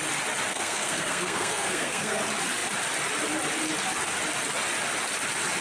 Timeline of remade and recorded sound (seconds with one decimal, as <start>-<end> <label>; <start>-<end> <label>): 0.0-0.5 recorded; 0.5-2.2 remade; 2.2-5.6 recorded